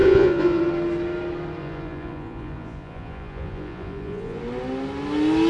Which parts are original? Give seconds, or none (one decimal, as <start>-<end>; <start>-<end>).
0.6-1.6; 4.4-5.5